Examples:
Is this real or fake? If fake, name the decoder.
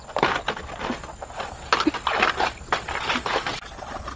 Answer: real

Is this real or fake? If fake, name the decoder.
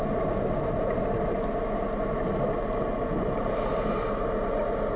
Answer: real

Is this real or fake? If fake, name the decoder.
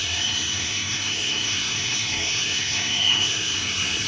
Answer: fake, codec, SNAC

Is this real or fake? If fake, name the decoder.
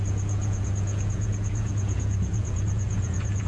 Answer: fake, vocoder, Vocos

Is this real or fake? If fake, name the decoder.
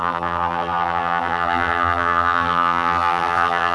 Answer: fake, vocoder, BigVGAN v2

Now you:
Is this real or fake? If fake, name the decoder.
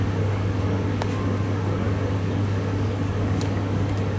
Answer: fake, codec, DAC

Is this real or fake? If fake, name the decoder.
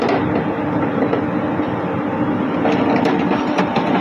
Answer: real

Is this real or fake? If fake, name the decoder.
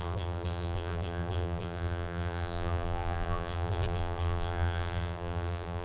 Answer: fake, vocoder, BigVGAN v2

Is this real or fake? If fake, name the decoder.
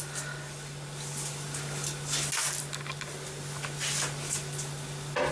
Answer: real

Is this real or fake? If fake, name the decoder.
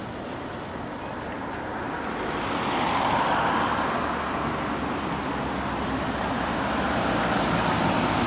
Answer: real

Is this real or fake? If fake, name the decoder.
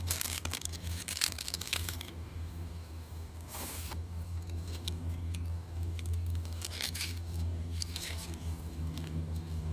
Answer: fake, codec, DAC